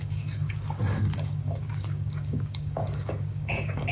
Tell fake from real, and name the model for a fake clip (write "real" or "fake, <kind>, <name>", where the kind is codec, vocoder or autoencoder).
fake, codec, DAC